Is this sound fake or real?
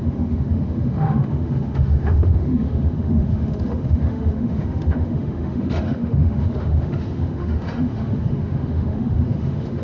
fake